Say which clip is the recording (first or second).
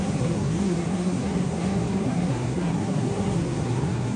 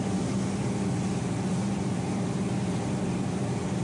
second